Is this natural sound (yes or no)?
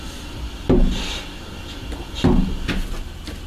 yes